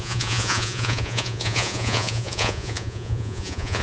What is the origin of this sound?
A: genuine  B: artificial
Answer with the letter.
B